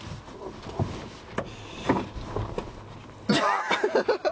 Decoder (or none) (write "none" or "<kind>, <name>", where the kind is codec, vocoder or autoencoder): none